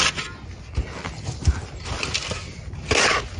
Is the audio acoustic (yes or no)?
yes